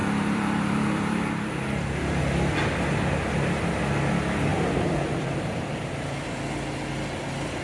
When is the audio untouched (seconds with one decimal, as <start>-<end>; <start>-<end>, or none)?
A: 2.2-4.5; 5.9-7.6